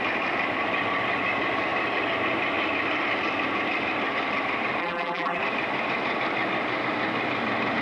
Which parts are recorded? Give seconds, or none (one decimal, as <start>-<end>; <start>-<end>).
0.0-4.8; 5.4-7.8